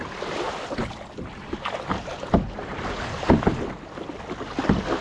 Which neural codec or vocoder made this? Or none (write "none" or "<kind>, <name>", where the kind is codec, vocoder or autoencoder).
none